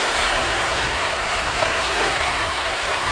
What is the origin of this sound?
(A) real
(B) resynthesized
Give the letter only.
B